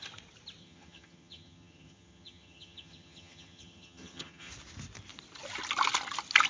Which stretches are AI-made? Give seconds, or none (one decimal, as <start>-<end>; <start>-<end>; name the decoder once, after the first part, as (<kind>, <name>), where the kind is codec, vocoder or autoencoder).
0.6-4.5 (vocoder, HiFi-GAN)